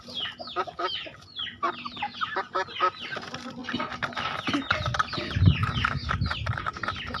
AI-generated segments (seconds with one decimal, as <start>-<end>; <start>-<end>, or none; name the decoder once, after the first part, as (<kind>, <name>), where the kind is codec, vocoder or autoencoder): none